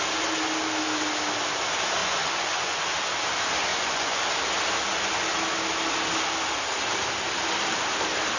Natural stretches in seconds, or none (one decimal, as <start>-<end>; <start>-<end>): 0.0-2.0; 2.8-3.7; 4.2-8.4